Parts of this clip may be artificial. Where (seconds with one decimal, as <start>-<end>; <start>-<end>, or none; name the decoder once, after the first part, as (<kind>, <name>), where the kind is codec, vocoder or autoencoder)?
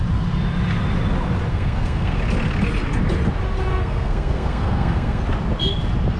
1.5-2.2 (codec, SNAC); 3.7-5.2